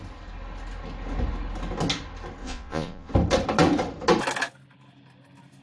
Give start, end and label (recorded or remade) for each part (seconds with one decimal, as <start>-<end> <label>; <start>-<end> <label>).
0.0-2.4 recorded; 2.4-3.1 remade; 3.1-5.6 recorded

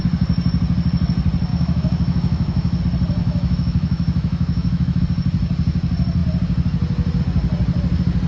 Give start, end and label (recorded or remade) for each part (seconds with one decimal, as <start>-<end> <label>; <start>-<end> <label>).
0.0-1.5 recorded; 1.5-2.8 remade; 2.8-3.2 recorded; 3.2-5.0 remade; 5.0-8.3 recorded

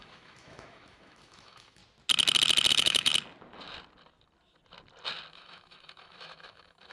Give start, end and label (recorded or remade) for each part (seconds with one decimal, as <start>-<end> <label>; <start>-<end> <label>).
0.0-1.8 remade; 1.8-2.7 recorded; 2.7-3.1 remade; 3.1-5.3 recorded; 5.3-6.9 remade

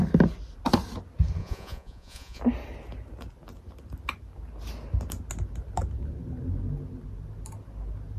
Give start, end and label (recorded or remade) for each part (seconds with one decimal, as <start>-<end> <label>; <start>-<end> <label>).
0.0-1.4 recorded; 1.4-2.4 remade; 2.4-8.2 recorded